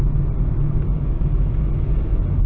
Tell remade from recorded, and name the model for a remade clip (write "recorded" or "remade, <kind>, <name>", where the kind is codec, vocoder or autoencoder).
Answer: recorded